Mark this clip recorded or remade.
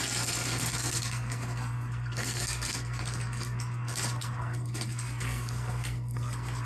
remade